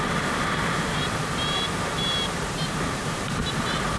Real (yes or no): no